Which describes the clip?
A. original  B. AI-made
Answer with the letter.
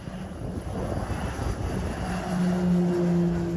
A